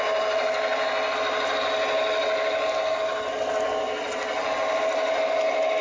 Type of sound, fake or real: real